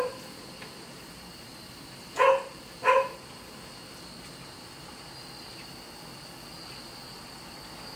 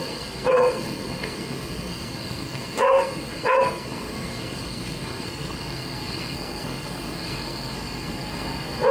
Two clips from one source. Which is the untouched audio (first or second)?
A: first